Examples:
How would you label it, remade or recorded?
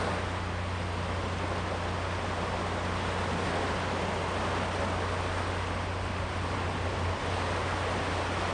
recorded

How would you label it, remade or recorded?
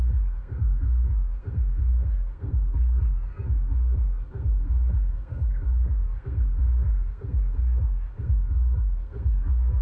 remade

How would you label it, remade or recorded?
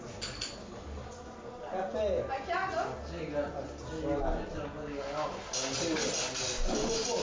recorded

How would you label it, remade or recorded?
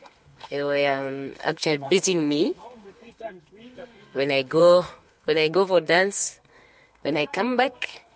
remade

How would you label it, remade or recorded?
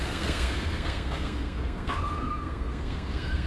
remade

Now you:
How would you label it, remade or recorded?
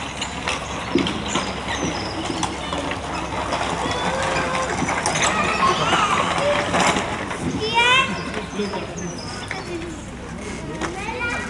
recorded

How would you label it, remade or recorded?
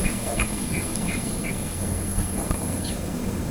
remade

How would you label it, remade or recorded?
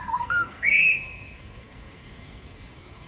remade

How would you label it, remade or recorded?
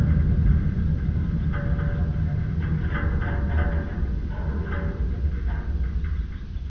recorded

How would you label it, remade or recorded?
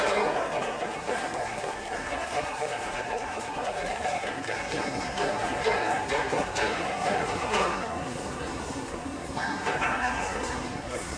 remade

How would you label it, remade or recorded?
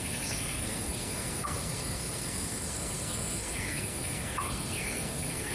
remade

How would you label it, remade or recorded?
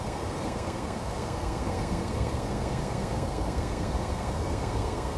remade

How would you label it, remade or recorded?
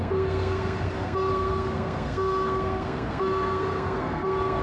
remade